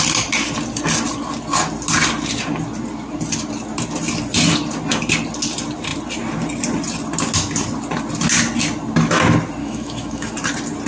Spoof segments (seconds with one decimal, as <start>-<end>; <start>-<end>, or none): 9.6-10.3